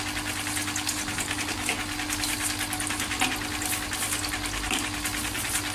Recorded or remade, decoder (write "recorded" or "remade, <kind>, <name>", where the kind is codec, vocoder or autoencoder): recorded